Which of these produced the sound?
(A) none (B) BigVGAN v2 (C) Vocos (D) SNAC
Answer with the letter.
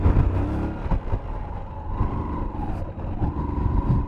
A